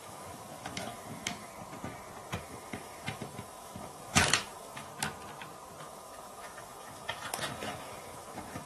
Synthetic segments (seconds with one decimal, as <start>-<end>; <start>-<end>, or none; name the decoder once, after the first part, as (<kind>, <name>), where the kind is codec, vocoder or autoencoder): 0.0-1.5 (autoencoder, DAC-VAE); 2.4-4.9; 5.8-8.7

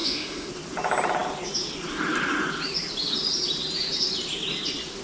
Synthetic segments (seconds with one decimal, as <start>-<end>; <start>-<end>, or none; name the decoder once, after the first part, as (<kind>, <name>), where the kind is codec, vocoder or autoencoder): 0.0-0.5 (autoencoder, DAC-VAE)